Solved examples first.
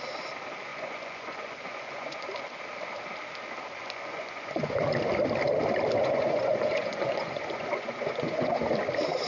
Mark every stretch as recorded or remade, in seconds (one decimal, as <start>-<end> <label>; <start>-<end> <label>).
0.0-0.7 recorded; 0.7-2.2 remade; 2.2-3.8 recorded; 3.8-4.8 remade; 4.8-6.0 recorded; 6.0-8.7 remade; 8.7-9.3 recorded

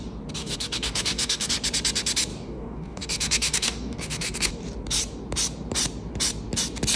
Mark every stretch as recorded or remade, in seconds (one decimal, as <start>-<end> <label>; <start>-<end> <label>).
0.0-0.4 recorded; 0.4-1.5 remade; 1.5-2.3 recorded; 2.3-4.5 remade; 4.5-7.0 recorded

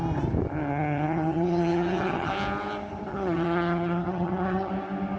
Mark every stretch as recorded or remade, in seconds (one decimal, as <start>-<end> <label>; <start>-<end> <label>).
0.0-0.7 recorded; 0.7-2.3 remade; 2.3-3.1 recorded; 3.1-4.7 remade; 4.7-5.2 recorded

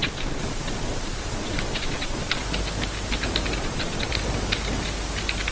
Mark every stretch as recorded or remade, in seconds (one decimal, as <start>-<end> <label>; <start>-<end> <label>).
0.0-2.4 remade; 2.4-3.6 recorded; 3.6-4.1 remade; 4.1-5.5 recorded

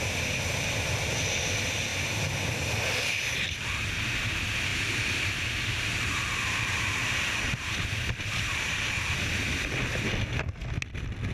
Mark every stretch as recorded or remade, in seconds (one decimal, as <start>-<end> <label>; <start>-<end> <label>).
0.0-4.7 recorded; 4.7-9.3 remade; 9.3-11.3 recorded

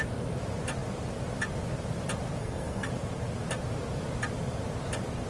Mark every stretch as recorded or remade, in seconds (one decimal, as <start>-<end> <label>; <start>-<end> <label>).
0.0-2.4 recorded; 2.4-2.9 remade; 2.9-5.3 recorded

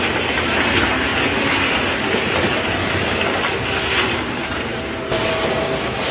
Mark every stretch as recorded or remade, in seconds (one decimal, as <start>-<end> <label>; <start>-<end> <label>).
0.0-6.1 recorded

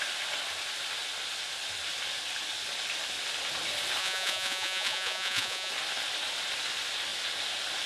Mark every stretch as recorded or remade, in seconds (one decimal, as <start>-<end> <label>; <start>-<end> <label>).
0.0-4.0 recorded; 4.0-5.7 remade; 5.7-7.9 recorded